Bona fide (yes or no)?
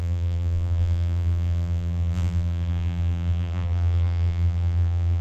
no